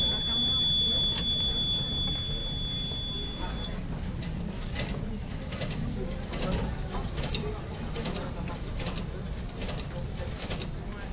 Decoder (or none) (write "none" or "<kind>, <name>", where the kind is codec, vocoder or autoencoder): none